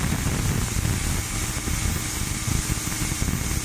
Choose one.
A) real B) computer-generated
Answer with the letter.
A